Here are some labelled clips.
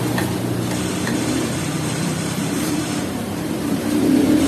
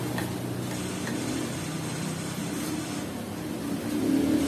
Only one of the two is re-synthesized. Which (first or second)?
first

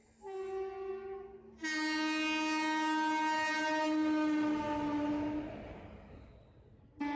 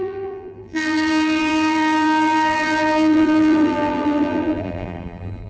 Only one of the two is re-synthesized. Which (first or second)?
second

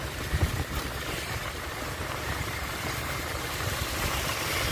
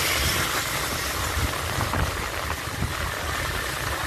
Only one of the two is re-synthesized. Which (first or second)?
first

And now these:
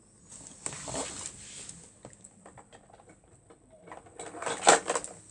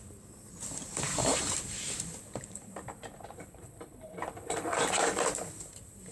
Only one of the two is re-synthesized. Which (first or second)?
second